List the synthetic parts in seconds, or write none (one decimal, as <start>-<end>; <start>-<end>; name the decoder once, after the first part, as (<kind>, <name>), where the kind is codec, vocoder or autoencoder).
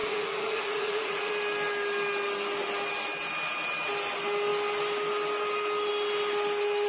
0.0-1.3 (vocoder, Vocos)